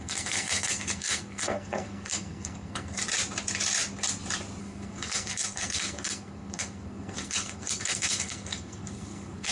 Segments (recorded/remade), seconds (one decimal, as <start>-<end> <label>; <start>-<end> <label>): 0.0-3.0 remade; 3.0-4.6 recorded; 4.6-9.5 remade